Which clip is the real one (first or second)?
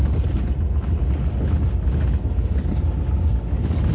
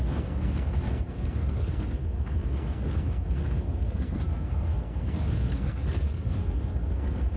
first